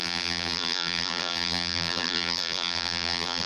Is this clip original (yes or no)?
no